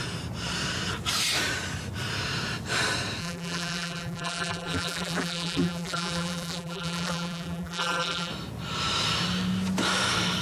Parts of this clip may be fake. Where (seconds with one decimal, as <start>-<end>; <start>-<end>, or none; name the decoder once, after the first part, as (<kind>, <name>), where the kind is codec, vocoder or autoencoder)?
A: 3.2-8.3 (vocoder, BigVGAN v2)